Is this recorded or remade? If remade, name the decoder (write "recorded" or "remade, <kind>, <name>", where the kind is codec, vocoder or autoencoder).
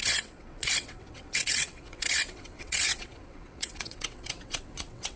remade, vocoder, WaveNeXt